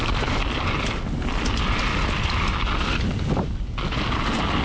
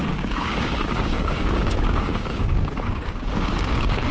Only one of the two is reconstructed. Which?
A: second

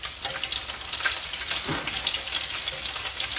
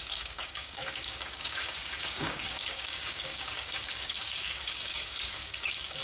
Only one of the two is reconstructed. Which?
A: second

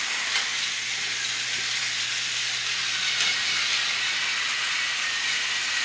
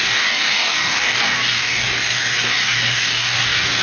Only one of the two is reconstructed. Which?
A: second